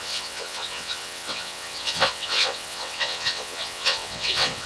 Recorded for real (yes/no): no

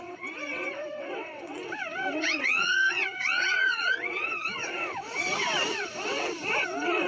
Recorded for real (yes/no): no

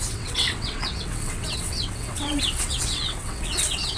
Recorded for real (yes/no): no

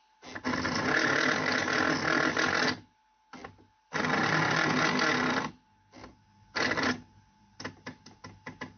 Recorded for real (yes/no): yes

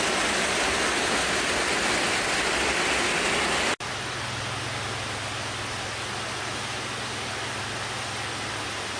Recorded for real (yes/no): yes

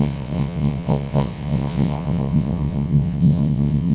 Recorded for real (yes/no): no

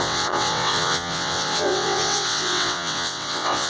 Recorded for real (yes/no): no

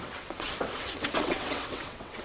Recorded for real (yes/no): no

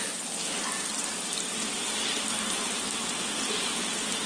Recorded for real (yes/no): yes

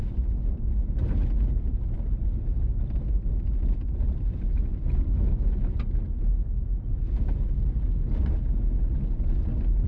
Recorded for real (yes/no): yes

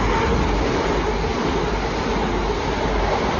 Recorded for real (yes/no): yes